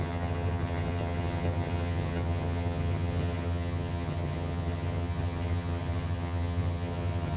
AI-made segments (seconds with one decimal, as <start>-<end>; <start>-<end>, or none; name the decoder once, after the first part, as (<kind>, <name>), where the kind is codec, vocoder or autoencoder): 0.0-7.4 (vocoder, HiFi-GAN)